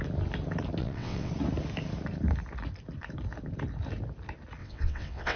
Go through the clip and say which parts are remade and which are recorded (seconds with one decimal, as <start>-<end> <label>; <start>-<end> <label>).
0.0-0.8 recorded; 0.8-1.3 remade; 1.3-4.6 recorded; 4.6-5.4 remade